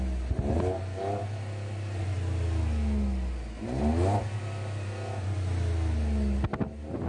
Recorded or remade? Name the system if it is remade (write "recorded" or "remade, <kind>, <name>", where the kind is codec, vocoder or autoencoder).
recorded